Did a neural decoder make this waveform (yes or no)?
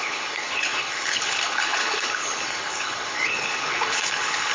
yes